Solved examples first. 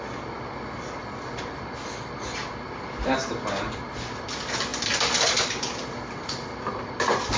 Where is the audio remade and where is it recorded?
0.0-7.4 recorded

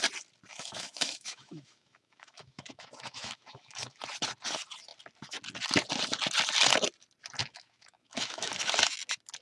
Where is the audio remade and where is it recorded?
0.0-0.5 recorded; 0.5-4.0 remade; 4.0-7.4 recorded; 7.4-8.5 remade; 8.5-9.4 recorded

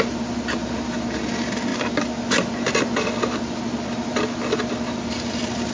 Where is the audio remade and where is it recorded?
0.0-5.7 recorded

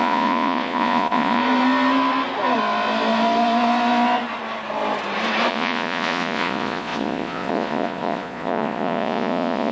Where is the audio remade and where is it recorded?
0.0-1.4 remade; 1.4-5.5 recorded; 5.5-9.7 remade

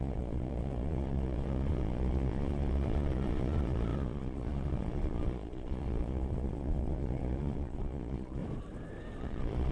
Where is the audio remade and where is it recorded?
0.0-8.4 remade; 8.4-9.2 recorded; 9.2-9.7 remade